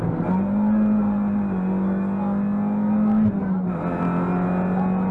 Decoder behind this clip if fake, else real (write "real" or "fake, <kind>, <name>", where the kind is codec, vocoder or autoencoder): real